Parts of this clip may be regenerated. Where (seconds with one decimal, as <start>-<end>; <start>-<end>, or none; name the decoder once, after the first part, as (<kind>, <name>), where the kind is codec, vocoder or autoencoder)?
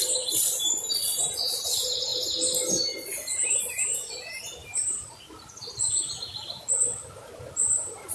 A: none